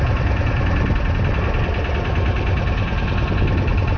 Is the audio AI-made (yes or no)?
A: no